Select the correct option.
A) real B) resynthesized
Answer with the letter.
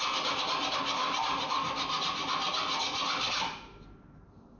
A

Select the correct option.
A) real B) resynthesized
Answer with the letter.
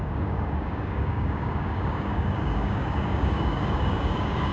B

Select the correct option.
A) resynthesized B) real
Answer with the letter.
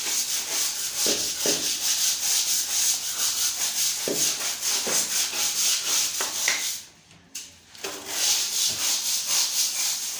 B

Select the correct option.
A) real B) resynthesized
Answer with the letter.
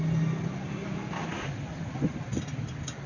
A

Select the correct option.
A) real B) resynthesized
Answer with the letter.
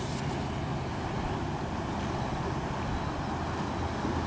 A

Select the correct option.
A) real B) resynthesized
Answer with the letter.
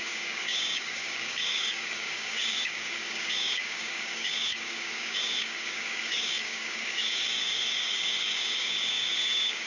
B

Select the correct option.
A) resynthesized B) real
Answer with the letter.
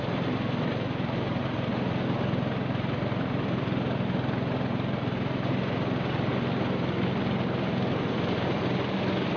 B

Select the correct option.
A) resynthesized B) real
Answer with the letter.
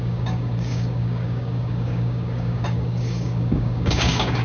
A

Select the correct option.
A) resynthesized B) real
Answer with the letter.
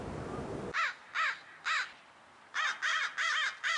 B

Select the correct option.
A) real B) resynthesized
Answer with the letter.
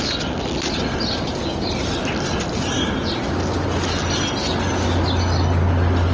A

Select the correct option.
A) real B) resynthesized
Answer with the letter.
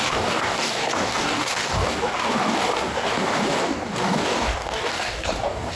B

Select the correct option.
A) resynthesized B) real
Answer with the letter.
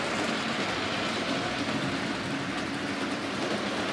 B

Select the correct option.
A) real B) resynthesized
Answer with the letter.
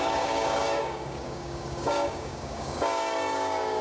B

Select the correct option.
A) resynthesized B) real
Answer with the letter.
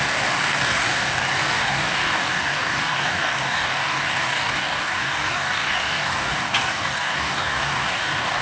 A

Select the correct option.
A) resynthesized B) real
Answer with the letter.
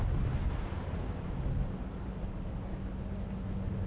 B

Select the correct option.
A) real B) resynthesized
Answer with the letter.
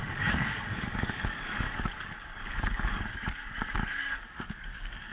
B